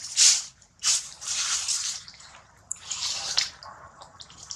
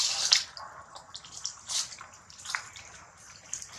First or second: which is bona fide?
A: second